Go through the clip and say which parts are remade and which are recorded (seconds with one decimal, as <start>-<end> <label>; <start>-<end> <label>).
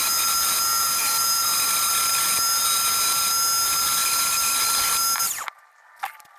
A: 0.0-1.0 recorded; 1.0-1.8 remade; 1.8-4.0 recorded; 4.0-4.7 remade; 4.7-6.4 recorded